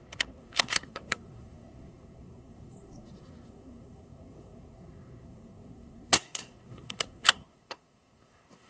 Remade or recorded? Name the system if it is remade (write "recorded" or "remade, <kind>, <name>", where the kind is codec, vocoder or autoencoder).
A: remade, codec, SNAC